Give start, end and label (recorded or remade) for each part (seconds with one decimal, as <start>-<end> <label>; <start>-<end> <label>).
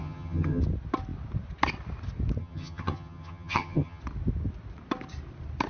0.0-0.6 remade; 0.6-2.4 recorded; 2.4-4.0 remade; 4.0-5.7 recorded